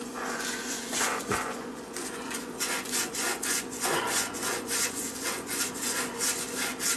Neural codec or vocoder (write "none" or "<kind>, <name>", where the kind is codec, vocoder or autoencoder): vocoder, Vocos